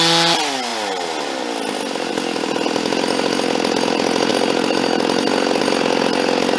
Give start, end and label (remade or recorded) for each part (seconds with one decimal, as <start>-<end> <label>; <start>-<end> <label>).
0.0-6.6 recorded